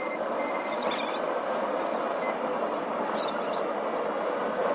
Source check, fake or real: real